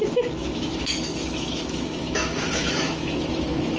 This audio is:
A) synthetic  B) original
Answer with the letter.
A